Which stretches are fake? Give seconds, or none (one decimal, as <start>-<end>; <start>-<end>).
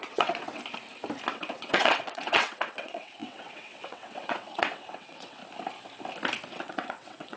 0.0-0.6; 1.3-5.4; 6.5-7.4